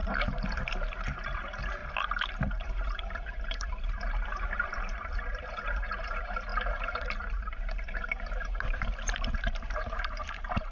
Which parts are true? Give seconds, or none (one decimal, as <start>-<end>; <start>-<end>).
1.8-2.5